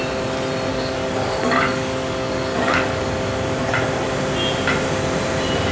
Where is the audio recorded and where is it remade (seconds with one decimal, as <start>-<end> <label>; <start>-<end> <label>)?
0.0-0.7 recorded; 0.7-3.1 remade; 3.1-5.7 recorded